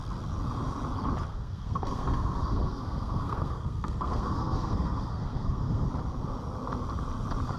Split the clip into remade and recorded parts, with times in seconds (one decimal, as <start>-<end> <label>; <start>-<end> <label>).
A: 0.0-1.3 recorded; 1.3-5.9 remade; 5.9-7.6 recorded

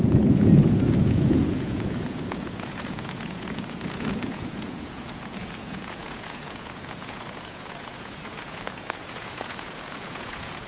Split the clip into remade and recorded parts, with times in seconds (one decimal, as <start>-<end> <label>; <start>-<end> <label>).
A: 0.0-10.7 remade

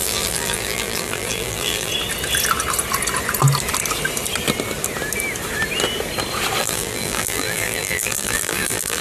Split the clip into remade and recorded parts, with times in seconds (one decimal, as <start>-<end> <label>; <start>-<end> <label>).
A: 0.0-1.9 remade; 1.9-6.6 recorded; 6.6-9.0 remade

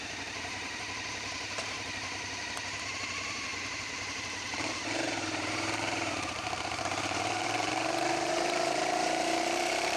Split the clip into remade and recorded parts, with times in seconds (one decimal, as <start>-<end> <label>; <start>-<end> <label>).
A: 0.0-10.0 remade

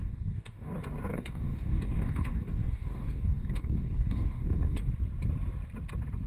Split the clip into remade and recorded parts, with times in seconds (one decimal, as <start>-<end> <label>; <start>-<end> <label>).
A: 0.0-0.7 remade; 0.7-1.1 recorded; 1.1-4.9 remade; 4.9-6.3 recorded